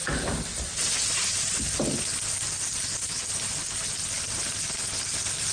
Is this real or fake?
real